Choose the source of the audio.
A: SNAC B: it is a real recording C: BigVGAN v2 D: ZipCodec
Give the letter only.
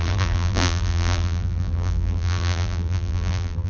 C